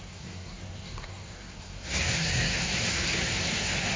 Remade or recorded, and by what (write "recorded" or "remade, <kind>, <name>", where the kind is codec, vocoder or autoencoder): remade, codec, SNAC